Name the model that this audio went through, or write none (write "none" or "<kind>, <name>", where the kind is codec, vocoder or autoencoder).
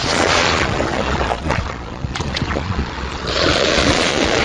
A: vocoder, Vocos